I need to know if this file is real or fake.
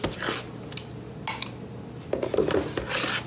real